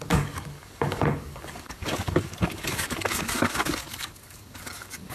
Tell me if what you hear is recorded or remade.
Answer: remade